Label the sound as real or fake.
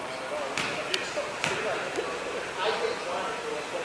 fake